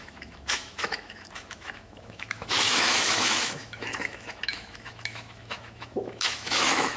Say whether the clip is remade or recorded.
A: remade